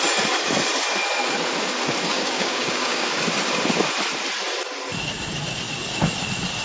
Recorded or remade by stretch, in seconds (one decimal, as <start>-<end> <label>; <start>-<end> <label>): 0.0-2.1 recorded; 2.1-3.2 remade; 3.2-6.6 recorded